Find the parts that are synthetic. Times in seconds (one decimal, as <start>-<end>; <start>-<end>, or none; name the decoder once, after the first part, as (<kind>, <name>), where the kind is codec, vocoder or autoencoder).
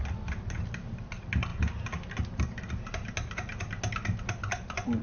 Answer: none